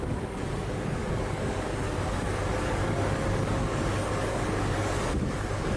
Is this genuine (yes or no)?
no